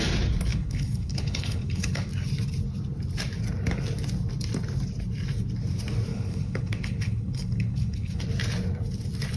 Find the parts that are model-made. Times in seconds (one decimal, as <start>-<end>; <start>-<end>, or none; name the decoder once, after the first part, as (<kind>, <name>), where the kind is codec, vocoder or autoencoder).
0.5-2.1 (codec, HILCodec); 6.1-8.2